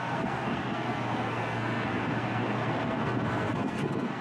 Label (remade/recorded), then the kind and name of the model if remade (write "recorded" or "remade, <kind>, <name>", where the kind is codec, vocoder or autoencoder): remade, codec, SNAC